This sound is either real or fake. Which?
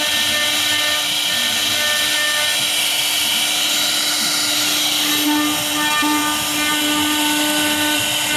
real